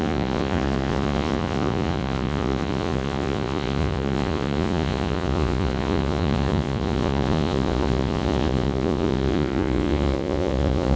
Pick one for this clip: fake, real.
fake